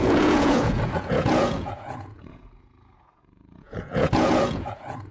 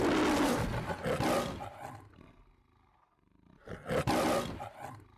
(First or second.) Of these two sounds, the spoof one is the first